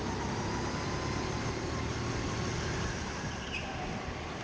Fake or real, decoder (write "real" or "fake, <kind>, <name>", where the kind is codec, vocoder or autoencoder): real